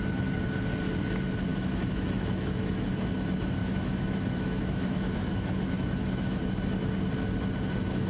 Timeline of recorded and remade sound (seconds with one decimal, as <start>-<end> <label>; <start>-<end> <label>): 0.0-1.5 recorded; 1.5-2.9 remade; 2.9-3.6 recorded; 3.6-6.4 remade; 6.4-8.1 recorded